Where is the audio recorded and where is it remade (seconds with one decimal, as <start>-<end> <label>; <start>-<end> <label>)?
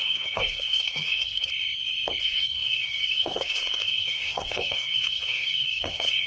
0.0-1.5 remade; 1.5-2.2 recorded; 2.2-6.3 remade